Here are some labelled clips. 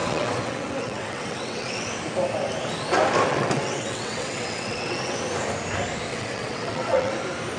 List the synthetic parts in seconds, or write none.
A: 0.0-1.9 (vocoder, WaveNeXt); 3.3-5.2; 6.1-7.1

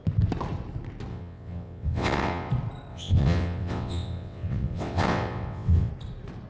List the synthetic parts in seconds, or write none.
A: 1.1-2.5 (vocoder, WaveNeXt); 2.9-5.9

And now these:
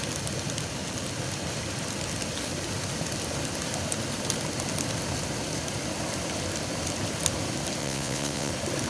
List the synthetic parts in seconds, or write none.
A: 7.8-8.5 (vocoder, WaveNeXt)

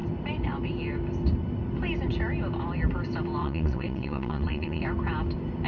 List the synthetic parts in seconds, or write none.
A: 3.4-4.8 (vocoder, WaveNeXt)

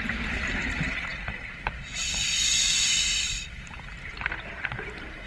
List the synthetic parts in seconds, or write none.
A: none